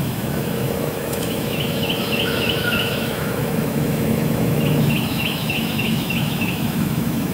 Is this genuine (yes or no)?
no